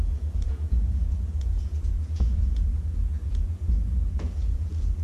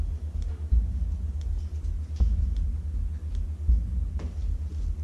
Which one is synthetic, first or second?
first